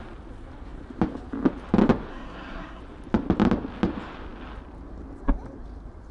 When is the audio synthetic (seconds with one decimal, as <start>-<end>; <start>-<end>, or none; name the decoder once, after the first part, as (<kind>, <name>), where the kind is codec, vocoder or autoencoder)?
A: 2.1-2.8 (codec, SNAC)